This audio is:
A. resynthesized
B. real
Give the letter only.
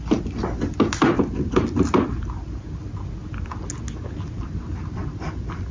B